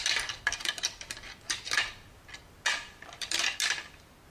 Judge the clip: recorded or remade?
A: recorded